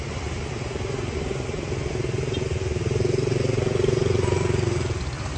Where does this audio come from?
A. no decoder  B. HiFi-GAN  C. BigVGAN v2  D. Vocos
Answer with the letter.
A